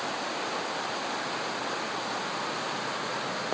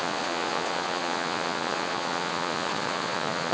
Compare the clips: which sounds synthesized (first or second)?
second